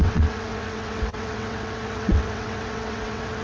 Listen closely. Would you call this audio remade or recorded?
remade